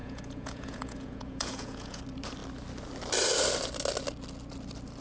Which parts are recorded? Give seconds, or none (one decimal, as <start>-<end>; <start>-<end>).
2.0-5.0